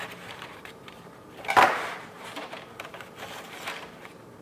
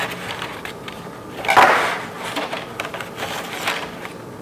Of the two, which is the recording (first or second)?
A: second